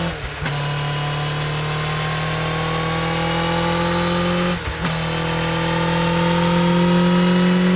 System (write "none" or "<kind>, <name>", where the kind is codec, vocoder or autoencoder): none